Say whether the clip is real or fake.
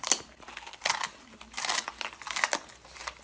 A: real